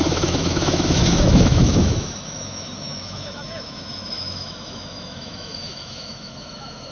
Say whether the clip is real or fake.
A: fake